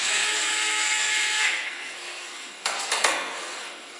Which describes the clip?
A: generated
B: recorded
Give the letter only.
A